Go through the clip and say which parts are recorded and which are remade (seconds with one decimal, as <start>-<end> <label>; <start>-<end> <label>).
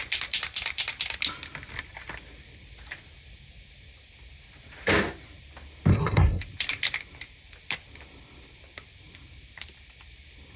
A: 0.0-5.9 recorded; 5.9-6.4 remade; 6.4-10.6 recorded